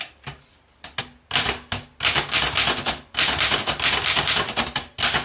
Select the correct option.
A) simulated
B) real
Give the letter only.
B